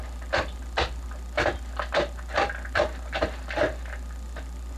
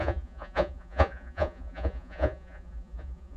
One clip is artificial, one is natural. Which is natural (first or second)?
first